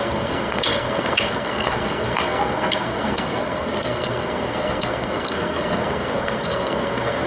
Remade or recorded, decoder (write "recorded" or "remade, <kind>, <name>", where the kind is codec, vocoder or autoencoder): remade, codec, SNAC